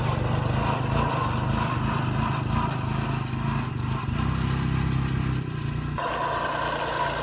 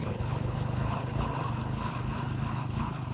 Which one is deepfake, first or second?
second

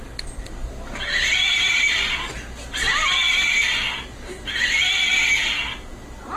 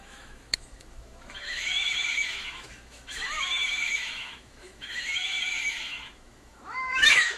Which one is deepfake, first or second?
second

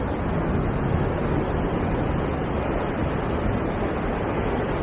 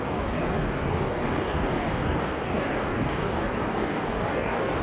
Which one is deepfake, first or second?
second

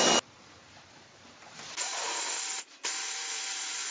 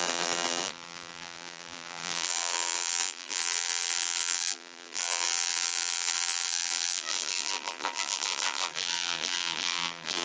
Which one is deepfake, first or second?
second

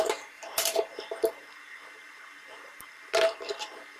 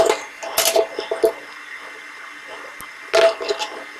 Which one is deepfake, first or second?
first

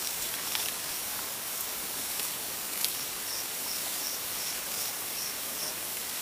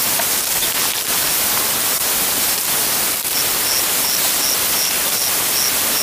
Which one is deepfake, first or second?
first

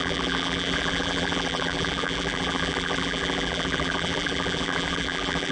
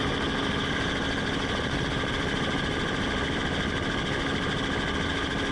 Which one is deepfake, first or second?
first